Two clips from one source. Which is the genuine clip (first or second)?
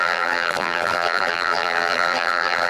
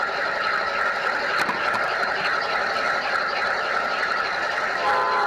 second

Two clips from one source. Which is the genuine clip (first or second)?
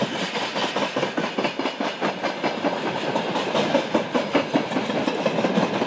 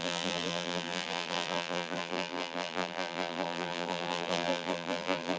first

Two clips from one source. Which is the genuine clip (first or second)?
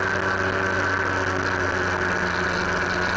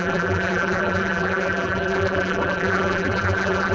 first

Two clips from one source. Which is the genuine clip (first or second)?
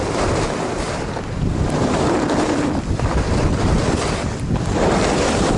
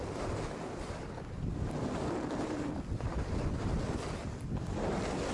second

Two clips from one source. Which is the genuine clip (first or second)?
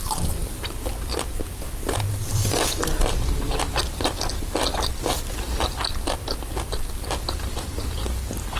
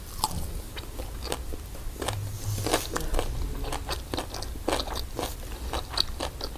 second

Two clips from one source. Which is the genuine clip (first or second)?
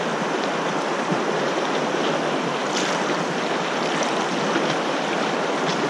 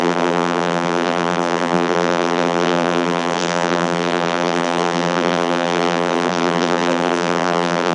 first